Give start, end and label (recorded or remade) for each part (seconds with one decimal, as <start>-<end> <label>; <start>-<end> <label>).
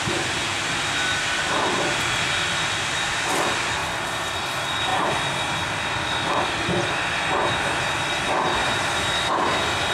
0.0-3.8 recorded; 3.8-4.3 remade; 4.3-9.9 recorded